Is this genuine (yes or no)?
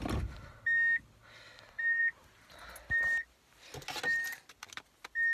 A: yes